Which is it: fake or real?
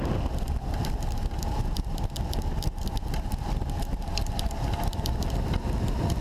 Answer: real